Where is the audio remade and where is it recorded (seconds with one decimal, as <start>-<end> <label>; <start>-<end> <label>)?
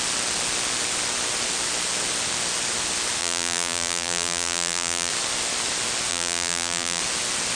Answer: 0.0-3.2 recorded; 3.2-5.1 remade; 5.1-6.1 recorded; 6.1-7.0 remade; 7.0-7.5 recorded